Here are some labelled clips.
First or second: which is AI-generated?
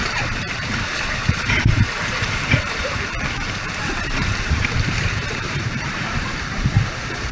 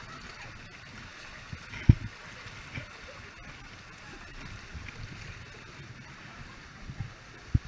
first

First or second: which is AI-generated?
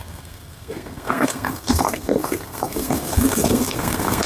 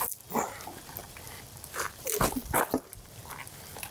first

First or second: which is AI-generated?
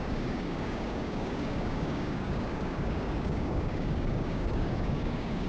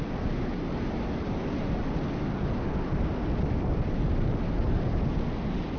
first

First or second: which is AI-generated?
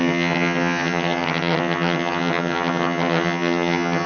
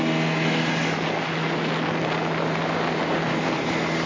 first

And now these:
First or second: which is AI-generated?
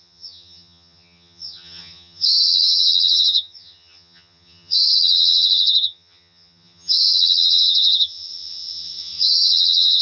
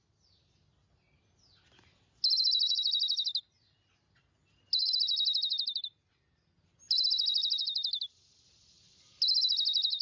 first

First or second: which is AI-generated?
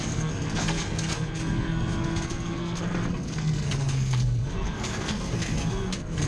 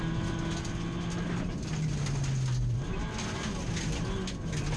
first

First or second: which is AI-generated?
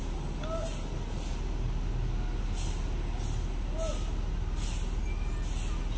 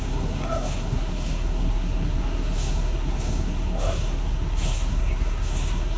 second